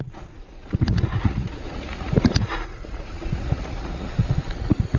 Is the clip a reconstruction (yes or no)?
yes